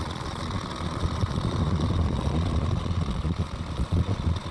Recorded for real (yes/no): no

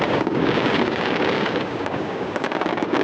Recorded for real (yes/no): no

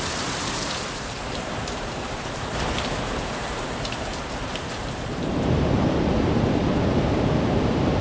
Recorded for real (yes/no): no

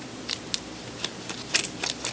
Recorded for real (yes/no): yes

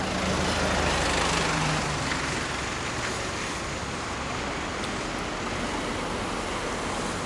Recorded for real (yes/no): yes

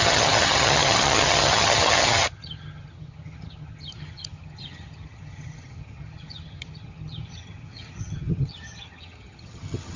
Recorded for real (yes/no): no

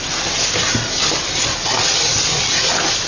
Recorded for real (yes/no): yes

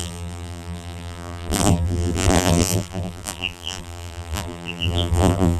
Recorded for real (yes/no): no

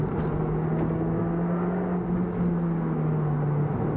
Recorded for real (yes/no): yes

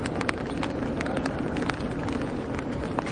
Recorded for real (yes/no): yes